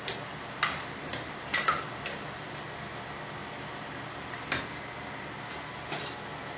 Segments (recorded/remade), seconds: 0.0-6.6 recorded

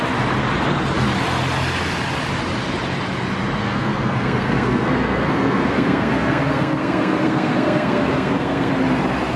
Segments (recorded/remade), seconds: 0.0-3.6 recorded; 3.6-8.7 remade; 8.7-9.4 recorded